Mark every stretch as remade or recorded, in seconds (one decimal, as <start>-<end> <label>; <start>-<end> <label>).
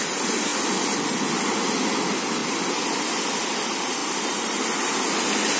0.0-4.0 recorded; 4.0-4.6 remade; 4.6-5.6 recorded